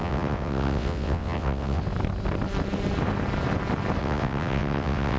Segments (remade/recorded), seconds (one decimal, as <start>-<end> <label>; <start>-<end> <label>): 0.0-1.8 remade; 1.8-4.0 recorded; 4.0-5.2 remade

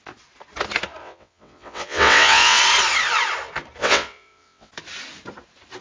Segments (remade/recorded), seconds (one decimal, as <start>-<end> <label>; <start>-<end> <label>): 0.0-1.0 recorded; 1.0-2.6 remade; 2.6-3.8 recorded; 3.8-4.7 remade; 4.7-5.8 recorded

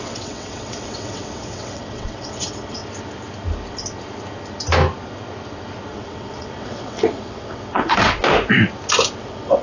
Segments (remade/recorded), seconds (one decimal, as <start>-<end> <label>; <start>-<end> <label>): 0.0-2.8 remade; 2.8-5.9 recorded; 5.9-8.2 remade; 8.2-9.2 recorded; 9.2-9.6 remade

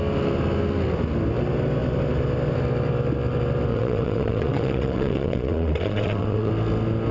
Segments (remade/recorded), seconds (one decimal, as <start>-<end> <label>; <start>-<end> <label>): 0.0-3.7 recorded; 3.7-6.5 remade; 6.5-7.1 recorded

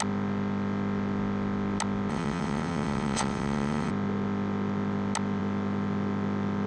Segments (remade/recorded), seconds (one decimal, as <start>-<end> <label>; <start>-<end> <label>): 0.0-2.1 recorded; 2.1-3.9 remade; 3.9-6.7 recorded

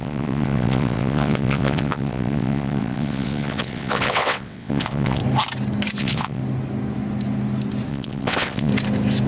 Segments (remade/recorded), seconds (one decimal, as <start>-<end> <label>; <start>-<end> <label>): 0.0-5.2 remade; 5.2-6.0 recorded; 6.0-6.4 remade; 6.4-7.9 recorded; 7.9-8.7 remade; 8.7-9.3 recorded

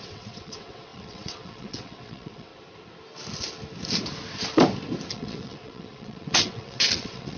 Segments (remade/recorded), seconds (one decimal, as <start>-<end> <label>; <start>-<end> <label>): 0.0-2.5 remade; 2.5-5.1 recorded; 5.1-7.4 remade